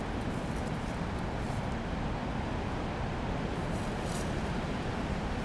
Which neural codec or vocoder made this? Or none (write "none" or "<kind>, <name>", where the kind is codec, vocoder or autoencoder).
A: none